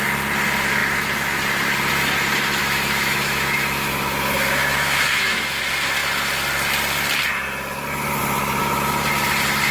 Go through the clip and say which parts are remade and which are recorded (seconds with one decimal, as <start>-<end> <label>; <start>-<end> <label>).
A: 0.0-2.6 recorded; 2.6-5.6 remade; 5.6-8.6 recorded; 8.6-9.1 remade; 9.1-9.7 recorded